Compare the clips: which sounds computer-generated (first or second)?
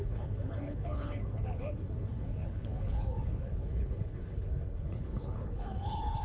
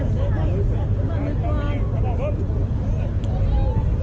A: first